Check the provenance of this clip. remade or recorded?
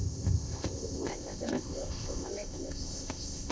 remade